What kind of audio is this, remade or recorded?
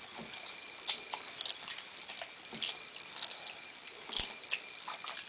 recorded